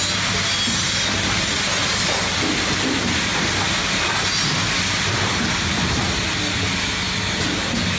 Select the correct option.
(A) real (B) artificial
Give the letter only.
A